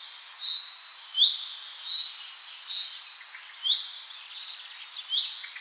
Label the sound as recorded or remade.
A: recorded